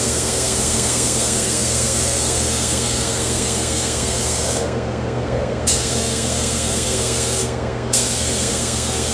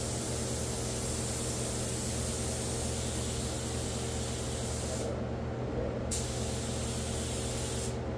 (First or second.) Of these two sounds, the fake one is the first